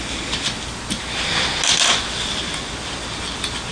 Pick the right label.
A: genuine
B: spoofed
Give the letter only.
A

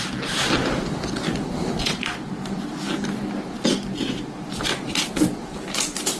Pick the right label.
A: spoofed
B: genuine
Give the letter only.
B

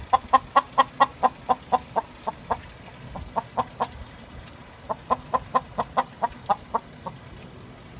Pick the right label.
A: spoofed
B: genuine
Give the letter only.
B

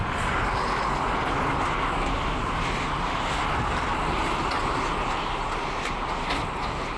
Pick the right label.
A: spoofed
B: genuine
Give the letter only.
B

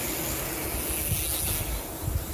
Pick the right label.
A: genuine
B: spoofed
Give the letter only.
A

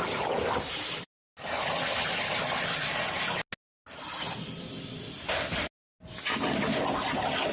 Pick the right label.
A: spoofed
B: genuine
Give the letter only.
B